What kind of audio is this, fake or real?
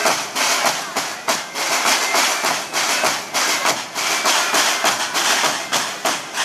fake